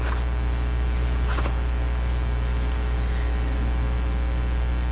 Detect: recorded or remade recorded